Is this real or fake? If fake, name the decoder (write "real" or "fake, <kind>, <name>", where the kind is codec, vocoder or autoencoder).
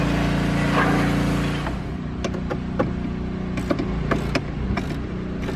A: real